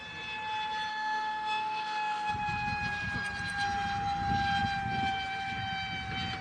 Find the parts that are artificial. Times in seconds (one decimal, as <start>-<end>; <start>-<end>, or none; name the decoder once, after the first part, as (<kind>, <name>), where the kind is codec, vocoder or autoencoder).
0.9-2.3 (autoencoder, DAC-VAE)